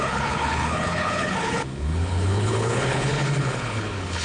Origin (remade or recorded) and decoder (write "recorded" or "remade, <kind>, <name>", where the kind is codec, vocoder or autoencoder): remade, codec, HILCodec